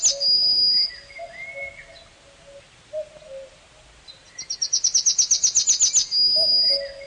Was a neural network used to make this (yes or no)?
no